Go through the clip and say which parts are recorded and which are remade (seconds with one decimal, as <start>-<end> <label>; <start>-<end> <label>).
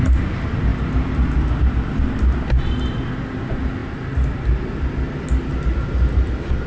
0.0-6.7 recorded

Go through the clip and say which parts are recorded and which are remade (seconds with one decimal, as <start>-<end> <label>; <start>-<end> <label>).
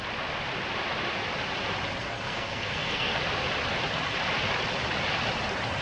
0.0-2.0 recorded; 2.0-3.2 remade; 3.2-5.8 recorded